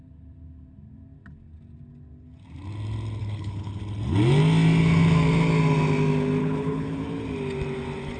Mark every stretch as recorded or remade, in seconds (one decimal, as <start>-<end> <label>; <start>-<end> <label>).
0.0-3.2 recorded; 3.2-3.8 remade; 3.8-6.4 recorded; 6.4-7.0 remade; 7.0-8.2 recorded